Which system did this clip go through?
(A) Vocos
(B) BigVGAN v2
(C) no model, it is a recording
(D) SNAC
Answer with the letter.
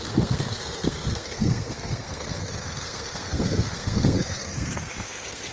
D